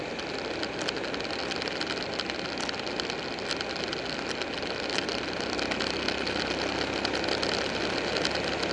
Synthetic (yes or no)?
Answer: no